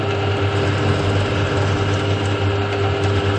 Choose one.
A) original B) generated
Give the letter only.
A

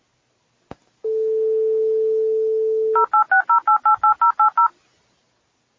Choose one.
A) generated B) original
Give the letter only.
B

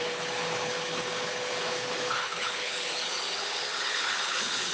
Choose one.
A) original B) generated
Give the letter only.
B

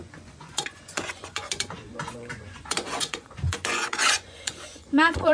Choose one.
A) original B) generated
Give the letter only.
B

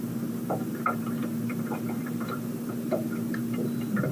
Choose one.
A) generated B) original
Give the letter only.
A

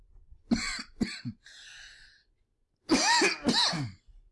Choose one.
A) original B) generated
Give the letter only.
A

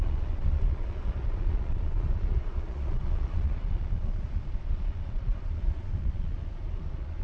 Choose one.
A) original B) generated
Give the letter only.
B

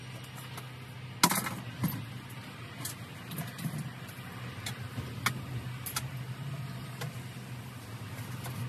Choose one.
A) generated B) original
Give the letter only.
B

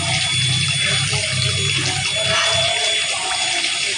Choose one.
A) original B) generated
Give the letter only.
A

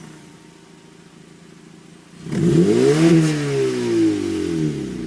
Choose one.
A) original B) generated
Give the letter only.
A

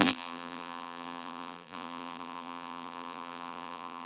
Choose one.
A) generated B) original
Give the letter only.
A